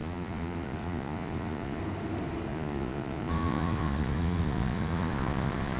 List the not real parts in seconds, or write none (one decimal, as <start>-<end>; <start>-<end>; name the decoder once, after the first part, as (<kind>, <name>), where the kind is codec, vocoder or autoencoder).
0.0-1.8 (vocoder, Vocos); 2.5-5.8